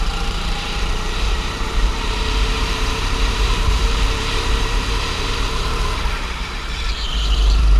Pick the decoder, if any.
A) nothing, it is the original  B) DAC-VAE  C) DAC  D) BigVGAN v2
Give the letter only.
D